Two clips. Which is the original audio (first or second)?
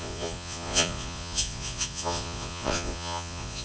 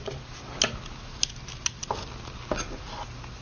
second